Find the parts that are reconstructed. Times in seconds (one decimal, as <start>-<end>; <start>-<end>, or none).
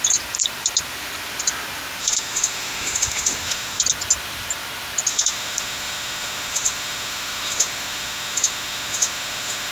2.0-3.8; 5.1-9.7